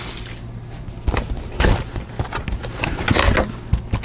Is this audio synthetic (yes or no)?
no